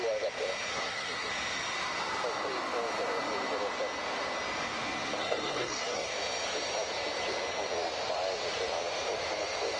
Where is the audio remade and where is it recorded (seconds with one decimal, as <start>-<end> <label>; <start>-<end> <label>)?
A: 0.0-0.7 recorded; 0.7-1.3 remade; 1.3-5.2 recorded; 5.2-6.1 remade; 6.1-9.8 recorded